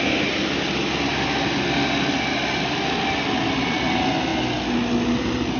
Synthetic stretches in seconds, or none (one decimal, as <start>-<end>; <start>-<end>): none